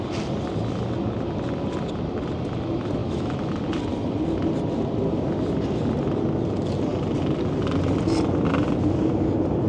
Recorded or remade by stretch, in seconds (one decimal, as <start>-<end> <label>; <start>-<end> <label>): 0.0-3.0 recorded; 3.0-3.5 remade; 3.5-9.7 recorded